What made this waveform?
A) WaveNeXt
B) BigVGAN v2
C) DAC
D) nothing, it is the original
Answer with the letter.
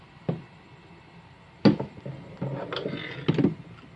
D